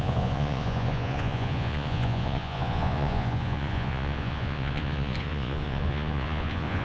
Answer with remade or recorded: remade